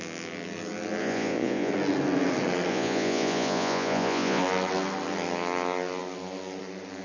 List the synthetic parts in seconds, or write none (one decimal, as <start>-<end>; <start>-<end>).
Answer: 1.0-1.7; 2.7-4.4